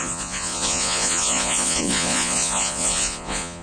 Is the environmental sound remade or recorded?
remade